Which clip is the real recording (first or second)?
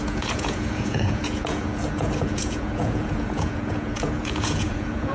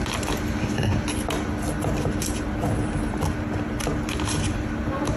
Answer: second